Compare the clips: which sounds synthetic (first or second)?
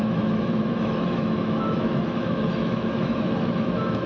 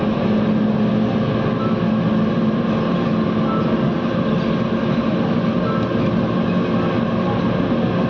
first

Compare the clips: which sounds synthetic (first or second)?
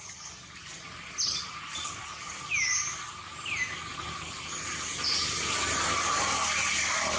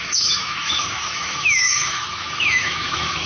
second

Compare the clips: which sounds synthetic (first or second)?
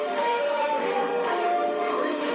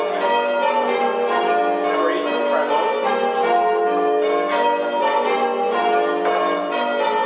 first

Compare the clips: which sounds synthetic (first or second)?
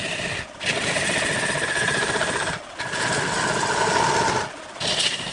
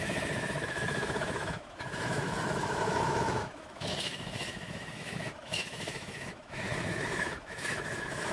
second